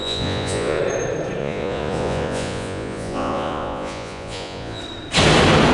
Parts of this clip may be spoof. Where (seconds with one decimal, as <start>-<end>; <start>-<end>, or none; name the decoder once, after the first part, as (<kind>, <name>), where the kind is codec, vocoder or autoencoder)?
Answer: 0.0-0.8 (vocoder, Vocos); 1.4-4.8